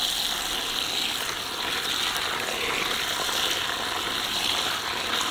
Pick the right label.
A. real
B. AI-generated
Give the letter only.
A